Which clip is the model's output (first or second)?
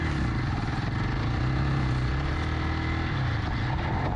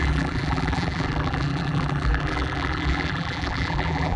second